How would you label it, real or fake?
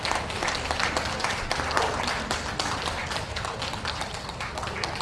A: real